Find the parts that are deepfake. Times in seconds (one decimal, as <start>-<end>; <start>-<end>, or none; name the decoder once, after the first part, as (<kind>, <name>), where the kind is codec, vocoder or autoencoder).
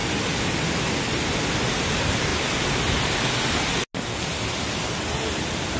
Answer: none